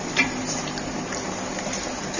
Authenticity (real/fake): real